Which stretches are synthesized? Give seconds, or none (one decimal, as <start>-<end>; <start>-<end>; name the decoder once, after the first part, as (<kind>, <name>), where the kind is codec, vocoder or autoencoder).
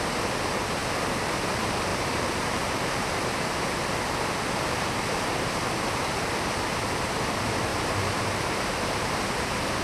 1.9-3.9 (vocoder, BigVGAN v2); 7.7-8.7